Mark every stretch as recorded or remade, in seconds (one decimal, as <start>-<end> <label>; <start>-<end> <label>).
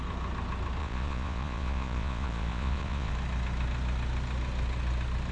0.0-0.8 recorded; 0.8-3.1 remade; 3.1-5.3 recorded